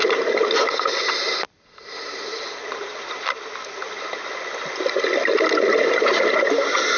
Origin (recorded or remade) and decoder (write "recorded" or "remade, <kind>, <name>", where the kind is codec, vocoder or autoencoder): recorded